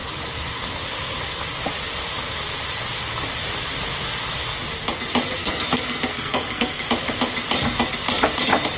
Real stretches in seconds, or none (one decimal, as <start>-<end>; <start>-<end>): 0.0-5.4; 6.9-8.8